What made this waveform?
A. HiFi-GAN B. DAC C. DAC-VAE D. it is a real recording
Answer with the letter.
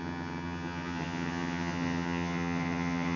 A